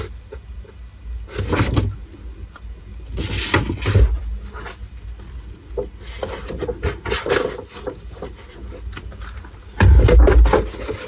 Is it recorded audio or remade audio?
recorded